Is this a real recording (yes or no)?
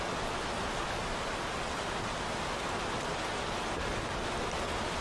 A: yes